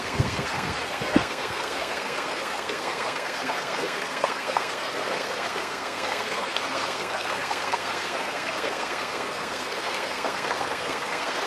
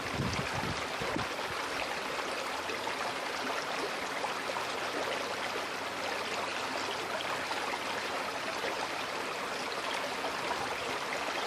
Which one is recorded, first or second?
second